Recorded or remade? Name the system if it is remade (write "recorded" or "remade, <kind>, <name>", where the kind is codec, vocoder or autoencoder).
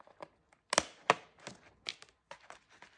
recorded